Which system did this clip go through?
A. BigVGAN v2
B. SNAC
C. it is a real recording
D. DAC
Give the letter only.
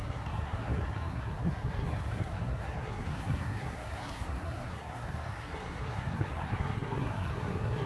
B